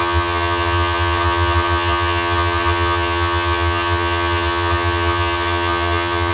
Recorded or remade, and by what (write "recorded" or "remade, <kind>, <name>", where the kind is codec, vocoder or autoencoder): remade, vocoder, HiFi-GAN